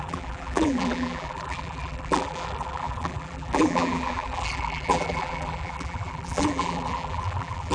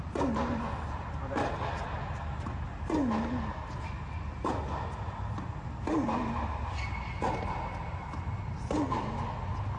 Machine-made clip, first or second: first